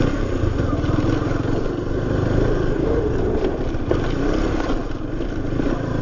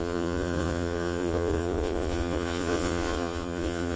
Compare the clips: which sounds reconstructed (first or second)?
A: second